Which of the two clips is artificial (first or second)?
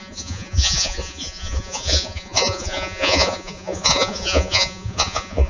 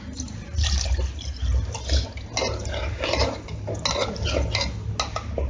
first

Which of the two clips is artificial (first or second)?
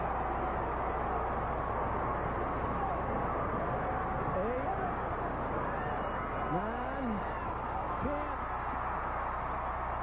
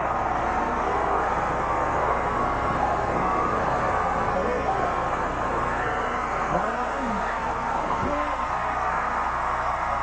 second